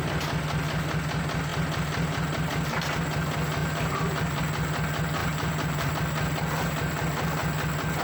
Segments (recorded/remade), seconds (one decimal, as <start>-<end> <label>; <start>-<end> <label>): 0.0-3.6 recorded; 3.6-4.4 remade; 4.4-5.2 recorded; 5.2-5.9 remade; 5.9-8.0 recorded